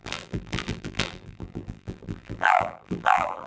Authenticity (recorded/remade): remade